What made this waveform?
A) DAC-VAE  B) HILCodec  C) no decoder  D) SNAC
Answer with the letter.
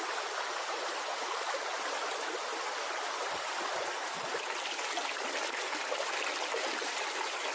C